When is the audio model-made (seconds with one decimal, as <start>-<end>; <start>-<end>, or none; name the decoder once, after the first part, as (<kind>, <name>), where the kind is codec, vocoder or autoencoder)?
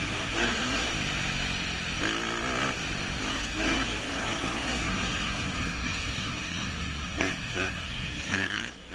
0.0-0.9 (codec, SNAC); 3.3-8.9